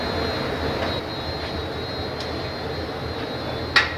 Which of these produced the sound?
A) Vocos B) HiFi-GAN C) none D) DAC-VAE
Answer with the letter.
C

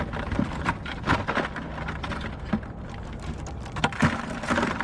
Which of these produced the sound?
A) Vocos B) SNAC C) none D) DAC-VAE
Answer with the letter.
C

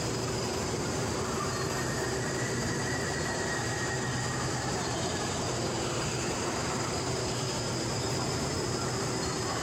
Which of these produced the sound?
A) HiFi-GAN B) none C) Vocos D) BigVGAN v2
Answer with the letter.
D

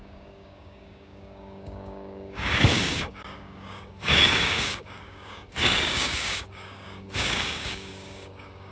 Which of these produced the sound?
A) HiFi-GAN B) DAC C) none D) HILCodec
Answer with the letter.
B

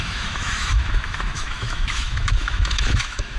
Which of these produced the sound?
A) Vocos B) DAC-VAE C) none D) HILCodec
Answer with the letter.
B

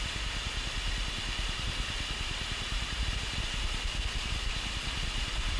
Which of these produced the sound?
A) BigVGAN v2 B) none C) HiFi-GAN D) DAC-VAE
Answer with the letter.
B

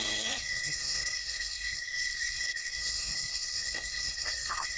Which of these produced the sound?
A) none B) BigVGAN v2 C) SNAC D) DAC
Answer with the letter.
C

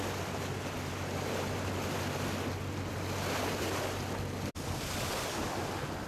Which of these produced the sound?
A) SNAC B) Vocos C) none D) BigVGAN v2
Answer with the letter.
C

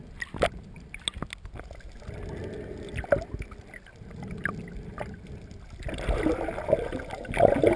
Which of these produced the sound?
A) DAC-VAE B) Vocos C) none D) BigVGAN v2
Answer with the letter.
C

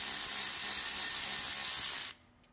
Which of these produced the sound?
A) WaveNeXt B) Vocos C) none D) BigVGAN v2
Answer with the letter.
C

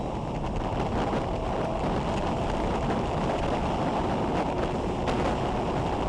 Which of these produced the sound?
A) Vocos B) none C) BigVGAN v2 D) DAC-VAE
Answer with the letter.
B